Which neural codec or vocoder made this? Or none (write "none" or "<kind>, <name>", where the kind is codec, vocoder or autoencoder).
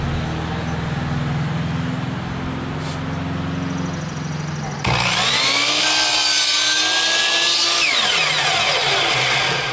none